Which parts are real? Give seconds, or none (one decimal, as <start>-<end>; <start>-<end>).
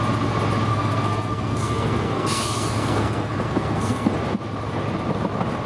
0.0-0.7; 4.1-5.7